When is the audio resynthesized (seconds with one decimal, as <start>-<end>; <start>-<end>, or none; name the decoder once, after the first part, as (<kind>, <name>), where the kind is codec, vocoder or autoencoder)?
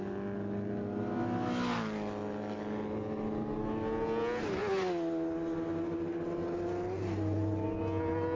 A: none